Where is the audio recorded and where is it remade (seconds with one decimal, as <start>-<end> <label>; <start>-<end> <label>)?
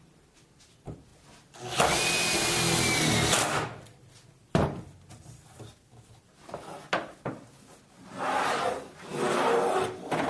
0.0-10.3 recorded